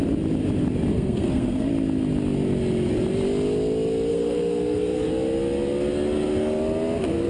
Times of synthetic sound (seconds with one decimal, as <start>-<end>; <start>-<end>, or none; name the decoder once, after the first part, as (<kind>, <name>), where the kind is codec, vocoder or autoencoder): 0.9-1.7 (codec, SNAC); 4.1-5.1